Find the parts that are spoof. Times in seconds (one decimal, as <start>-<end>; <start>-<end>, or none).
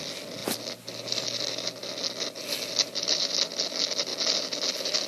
none